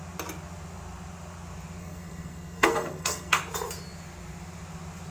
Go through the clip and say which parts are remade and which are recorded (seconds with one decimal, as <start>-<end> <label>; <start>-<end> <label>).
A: 0.0-1.8 recorded; 1.8-3.4 remade; 3.4-5.1 recorded